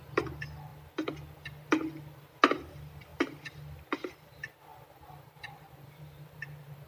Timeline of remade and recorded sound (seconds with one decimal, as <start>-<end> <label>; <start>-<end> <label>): 0.0-0.7 remade; 0.7-2.2 recorded; 2.2-3.1 remade; 3.1-4.1 recorded; 4.1-6.9 remade